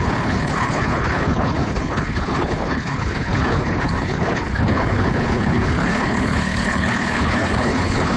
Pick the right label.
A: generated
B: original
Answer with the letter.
A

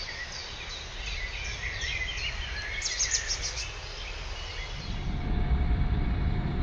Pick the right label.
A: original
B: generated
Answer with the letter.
A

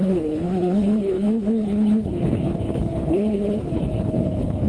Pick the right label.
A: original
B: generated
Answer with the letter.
B